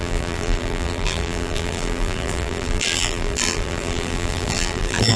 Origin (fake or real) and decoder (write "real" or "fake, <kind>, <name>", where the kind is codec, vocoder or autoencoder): fake, vocoder, BigVGAN v2